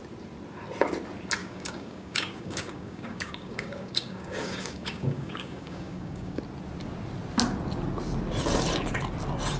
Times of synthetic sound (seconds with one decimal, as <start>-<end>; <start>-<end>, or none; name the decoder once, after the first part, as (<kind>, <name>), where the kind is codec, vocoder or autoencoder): 1.4-6.4 (codec, DAC)